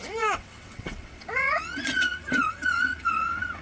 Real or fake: fake